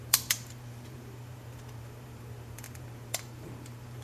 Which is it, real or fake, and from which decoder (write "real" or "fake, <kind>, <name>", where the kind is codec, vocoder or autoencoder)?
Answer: fake, vocoder, BigVGAN v2